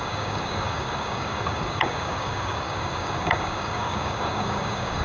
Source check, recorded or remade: remade